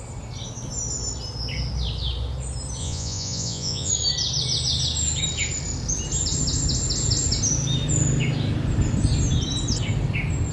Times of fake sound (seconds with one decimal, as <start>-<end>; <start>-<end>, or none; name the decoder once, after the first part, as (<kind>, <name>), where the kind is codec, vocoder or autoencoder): 2.8-3.9 (vocoder, Vocos)